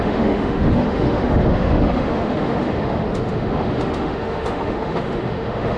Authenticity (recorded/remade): remade